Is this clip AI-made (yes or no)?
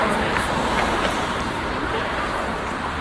yes